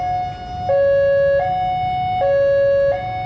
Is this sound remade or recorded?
recorded